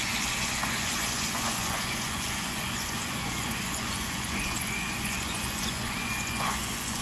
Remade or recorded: remade